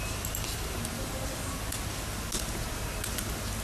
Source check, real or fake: real